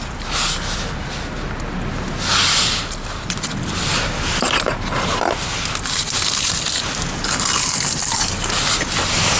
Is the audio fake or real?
real